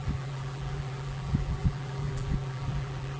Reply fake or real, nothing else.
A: fake